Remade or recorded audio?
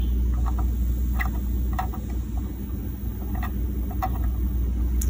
recorded